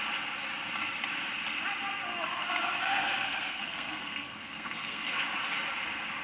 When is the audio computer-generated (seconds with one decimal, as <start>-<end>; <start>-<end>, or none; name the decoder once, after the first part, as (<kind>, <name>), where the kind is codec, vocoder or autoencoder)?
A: 2.8-5.2 (codec, SNAC)